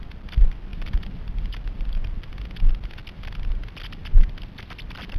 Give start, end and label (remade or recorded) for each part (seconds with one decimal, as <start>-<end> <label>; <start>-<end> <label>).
0.0-0.7 recorded; 0.7-1.5 remade; 1.5-5.2 recorded